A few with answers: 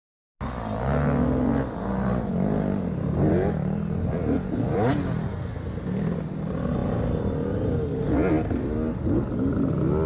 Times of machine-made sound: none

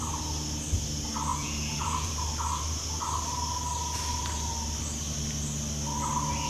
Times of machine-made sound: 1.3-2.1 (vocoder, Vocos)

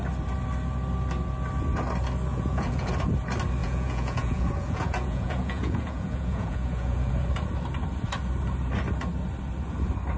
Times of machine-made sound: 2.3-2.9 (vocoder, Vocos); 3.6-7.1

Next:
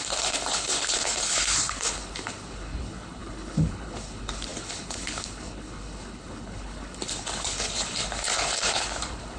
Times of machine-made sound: 0.0-9.4 (codec, HILCodec)